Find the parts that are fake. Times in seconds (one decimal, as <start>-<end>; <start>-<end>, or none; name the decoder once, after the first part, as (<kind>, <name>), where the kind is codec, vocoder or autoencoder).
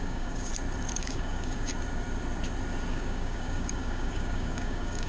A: 0.0-0.5 (codec, DAC); 1.0-1.7; 2.9-5.1